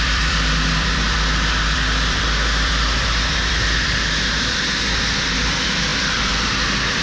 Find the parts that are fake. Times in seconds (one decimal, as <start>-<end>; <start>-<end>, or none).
0.0-7.0